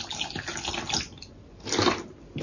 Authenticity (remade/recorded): recorded